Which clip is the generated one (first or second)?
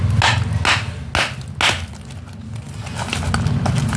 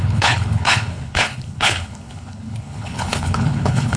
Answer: second